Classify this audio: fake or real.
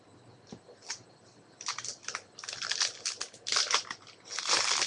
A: real